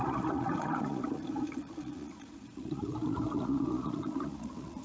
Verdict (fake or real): fake